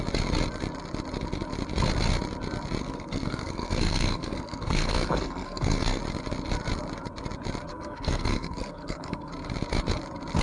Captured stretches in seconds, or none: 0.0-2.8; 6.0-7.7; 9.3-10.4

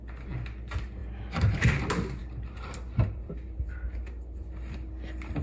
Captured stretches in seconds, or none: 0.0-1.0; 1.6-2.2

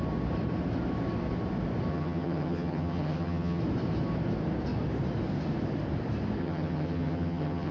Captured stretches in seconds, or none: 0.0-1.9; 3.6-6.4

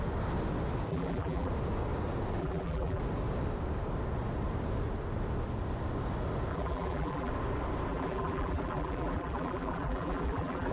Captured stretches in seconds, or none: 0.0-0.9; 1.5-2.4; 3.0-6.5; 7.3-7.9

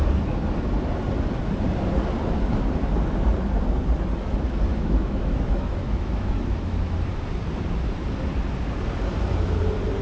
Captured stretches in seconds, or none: 0.0-4.7; 7.1-10.0

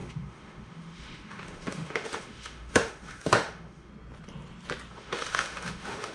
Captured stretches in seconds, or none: 3.9-4.9

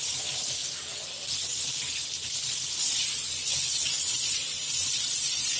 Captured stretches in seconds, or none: 0.6-4.0